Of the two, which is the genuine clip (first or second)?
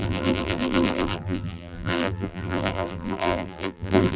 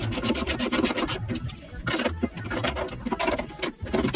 second